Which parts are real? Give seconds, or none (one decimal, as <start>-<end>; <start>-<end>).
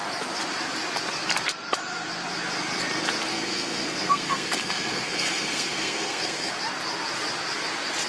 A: 0.0-3.3; 6.5-8.1